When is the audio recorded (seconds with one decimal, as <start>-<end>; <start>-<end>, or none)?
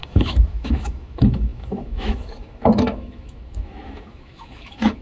none